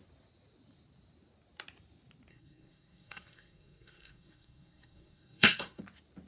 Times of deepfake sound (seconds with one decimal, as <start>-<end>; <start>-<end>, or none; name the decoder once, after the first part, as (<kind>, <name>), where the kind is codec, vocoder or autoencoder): 2.3-5.8 (codec, SNAC)